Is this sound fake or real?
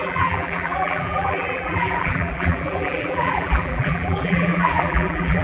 fake